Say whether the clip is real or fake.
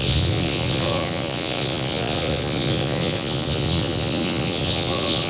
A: fake